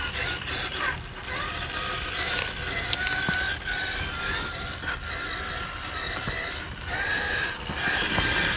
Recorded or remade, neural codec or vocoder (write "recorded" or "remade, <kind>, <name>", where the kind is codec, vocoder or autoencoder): recorded